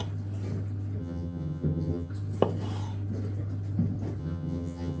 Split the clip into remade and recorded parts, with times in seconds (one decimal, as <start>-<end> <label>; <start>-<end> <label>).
0.0-1.0 recorded; 1.0-2.1 remade; 2.1-4.2 recorded; 4.2-5.0 remade